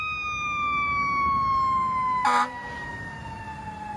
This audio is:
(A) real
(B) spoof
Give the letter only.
A